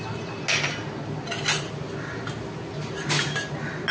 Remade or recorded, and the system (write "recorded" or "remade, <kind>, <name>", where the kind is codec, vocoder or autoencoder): recorded